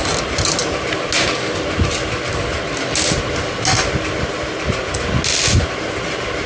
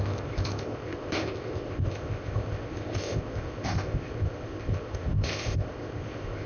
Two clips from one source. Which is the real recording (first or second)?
first